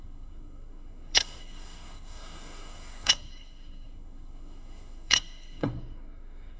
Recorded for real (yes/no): no